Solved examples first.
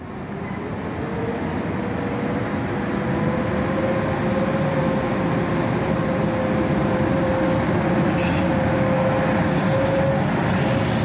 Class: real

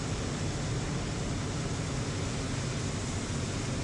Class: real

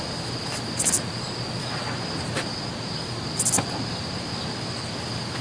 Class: real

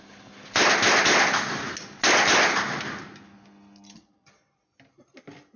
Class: real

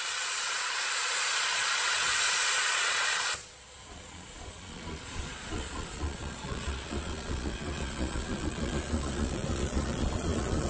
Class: fake